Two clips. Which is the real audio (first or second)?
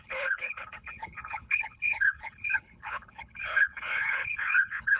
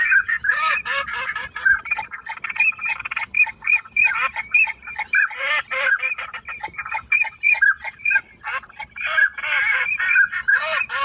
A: second